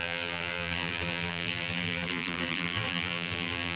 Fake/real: fake